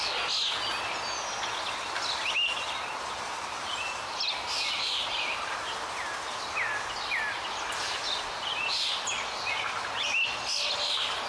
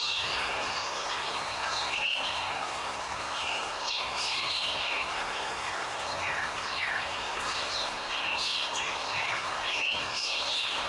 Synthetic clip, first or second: second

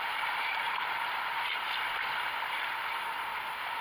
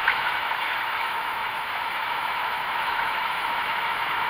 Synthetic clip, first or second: second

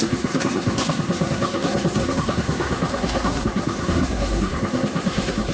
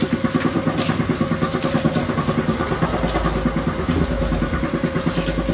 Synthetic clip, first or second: first